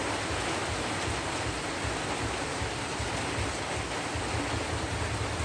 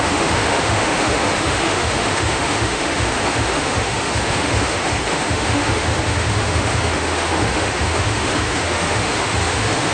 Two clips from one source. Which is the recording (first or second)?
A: first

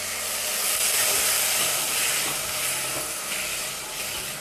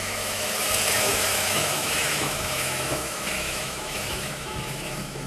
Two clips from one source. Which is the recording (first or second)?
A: first